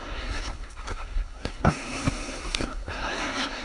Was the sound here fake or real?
fake